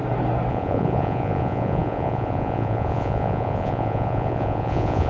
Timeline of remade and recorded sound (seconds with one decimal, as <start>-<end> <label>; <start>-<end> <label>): 0.0-0.5 recorded; 0.5-5.1 remade